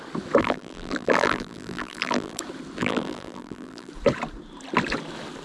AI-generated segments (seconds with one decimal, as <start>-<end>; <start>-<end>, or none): 0.4-2.4; 2.8-3.9